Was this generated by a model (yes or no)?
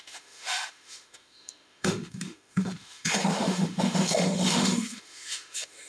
yes